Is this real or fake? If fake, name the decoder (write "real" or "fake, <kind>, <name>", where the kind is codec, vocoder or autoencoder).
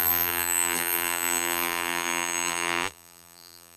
fake, vocoder, BigVGAN v2